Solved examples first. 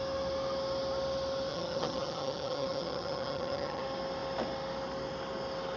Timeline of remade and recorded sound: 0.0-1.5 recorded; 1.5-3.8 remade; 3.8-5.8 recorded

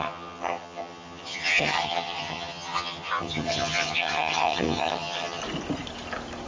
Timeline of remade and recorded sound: 0.0-5.4 remade; 5.4-6.5 recorded

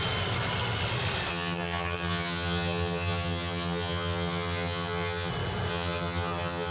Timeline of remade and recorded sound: 0.0-1.3 recorded; 1.3-5.3 remade; 5.3-5.7 recorded; 5.7-6.7 remade

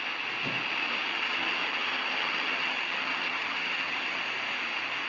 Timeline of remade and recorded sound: 0.0-1.1 recorded; 1.1-4.2 remade; 4.2-5.1 recorded

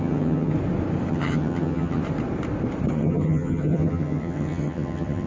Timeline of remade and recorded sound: 0.0-0.5 remade; 0.5-1.1 recorded; 1.1-2.0 remade; 2.0-2.9 recorded; 2.9-5.3 remade

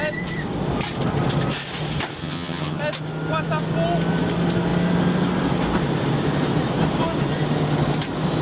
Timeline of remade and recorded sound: 0.0-2.2 recorded; 2.2-2.8 remade; 2.8-8.4 recorded

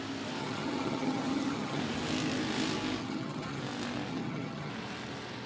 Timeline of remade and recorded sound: 0.0-0.4 recorded; 0.4-1.8 remade; 1.8-3.0 recorded; 3.0-3.6 remade; 3.6-4.1 recorded; 4.1-4.7 remade; 4.7-5.5 recorded

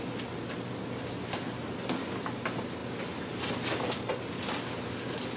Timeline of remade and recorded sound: 0.0-5.4 recorded